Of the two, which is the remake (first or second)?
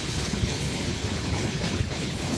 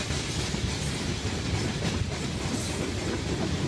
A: first